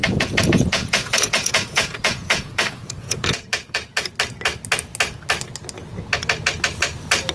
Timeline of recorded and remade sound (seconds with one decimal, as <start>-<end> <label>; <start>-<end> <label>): 0.0-4.1 remade; 4.1-7.3 recorded